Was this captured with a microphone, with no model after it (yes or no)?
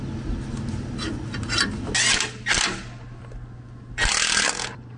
yes